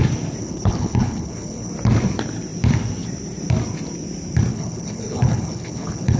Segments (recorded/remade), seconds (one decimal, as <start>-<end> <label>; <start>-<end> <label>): 0.0-0.4 recorded; 0.4-1.7 remade; 1.7-4.5 recorded; 4.5-6.2 remade